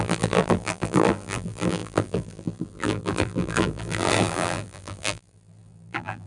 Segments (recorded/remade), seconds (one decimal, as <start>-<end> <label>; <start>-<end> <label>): 0.0-6.3 remade